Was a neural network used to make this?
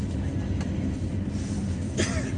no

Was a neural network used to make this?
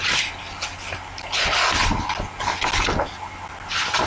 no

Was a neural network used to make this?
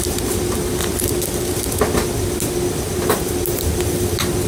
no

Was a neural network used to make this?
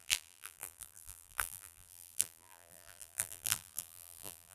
yes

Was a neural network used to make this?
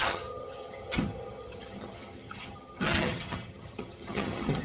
yes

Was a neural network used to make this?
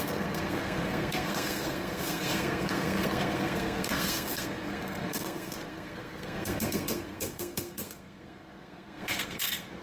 yes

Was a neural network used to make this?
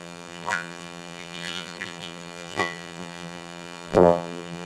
yes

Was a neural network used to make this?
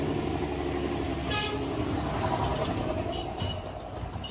no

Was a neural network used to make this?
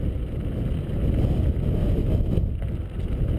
no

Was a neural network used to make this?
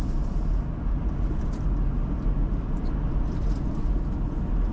no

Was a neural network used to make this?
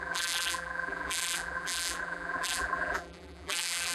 yes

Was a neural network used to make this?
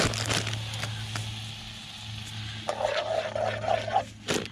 no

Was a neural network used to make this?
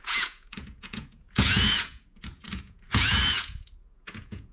yes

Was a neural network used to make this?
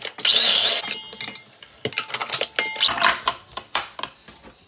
no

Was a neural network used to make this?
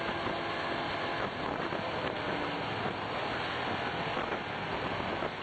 no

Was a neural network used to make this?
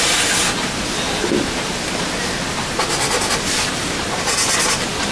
no